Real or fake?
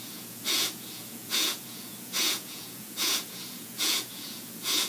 fake